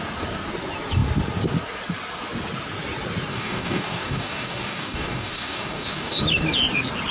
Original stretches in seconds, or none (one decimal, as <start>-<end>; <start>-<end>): 0.0-3.3; 6.2-7.1